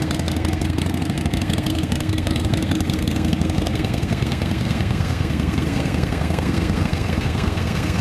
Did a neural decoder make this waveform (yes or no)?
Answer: yes